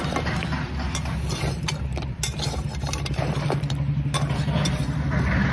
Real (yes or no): yes